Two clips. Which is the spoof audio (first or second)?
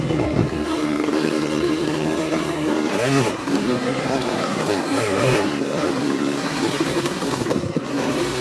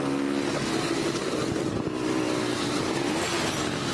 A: first